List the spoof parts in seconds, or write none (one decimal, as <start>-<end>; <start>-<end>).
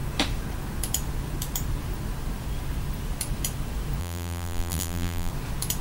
4.0-5.3